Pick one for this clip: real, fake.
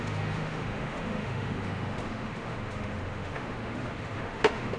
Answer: fake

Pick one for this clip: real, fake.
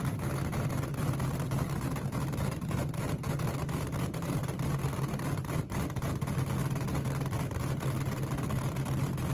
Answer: real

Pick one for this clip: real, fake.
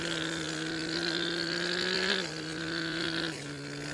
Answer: real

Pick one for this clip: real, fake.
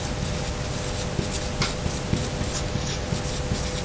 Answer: real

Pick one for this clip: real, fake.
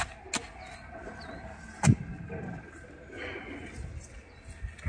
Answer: real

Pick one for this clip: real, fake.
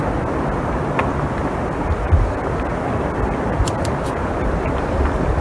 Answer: real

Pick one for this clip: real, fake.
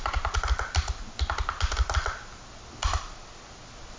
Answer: real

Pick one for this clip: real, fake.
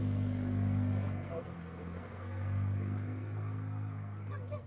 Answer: fake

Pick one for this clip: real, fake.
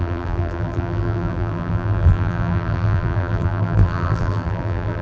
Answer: fake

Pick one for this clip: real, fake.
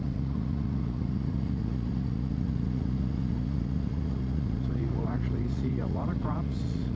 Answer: fake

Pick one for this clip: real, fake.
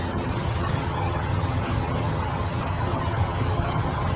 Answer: fake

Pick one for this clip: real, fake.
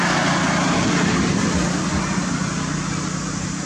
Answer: real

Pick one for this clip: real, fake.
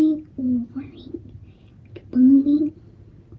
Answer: real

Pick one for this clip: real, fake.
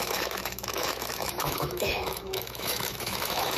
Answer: fake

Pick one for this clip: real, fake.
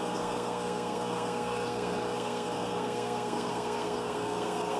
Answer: fake